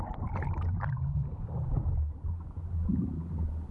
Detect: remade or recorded recorded